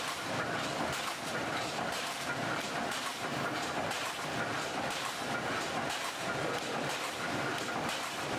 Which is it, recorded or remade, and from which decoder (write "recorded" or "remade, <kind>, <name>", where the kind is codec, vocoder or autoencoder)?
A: remade, vocoder, BigVGAN v2